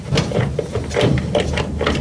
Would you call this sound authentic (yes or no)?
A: yes